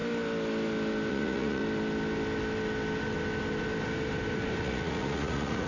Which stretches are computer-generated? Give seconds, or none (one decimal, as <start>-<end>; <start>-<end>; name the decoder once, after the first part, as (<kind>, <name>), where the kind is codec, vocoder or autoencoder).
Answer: 1.1-1.6 (vocoder, Vocos); 4.6-5.7